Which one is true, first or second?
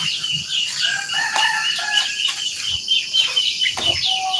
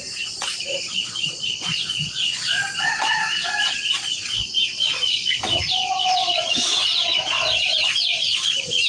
first